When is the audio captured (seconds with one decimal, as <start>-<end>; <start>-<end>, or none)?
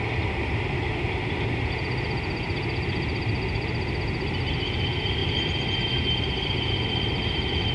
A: 0.0-7.7